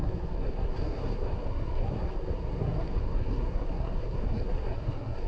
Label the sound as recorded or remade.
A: remade